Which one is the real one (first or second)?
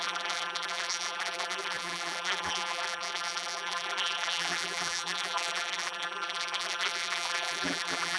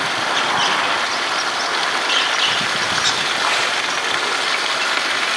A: second